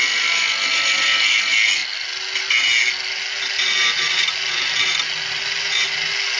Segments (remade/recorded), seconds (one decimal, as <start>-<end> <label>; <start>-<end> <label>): 0.0-6.4 recorded